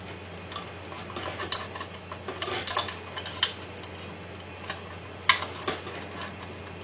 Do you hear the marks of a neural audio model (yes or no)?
no